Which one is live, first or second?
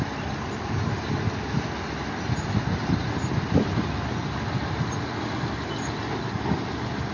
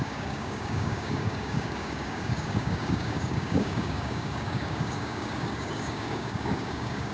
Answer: first